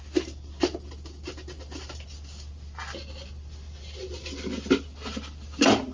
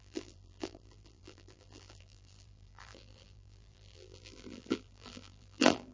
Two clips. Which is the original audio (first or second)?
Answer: first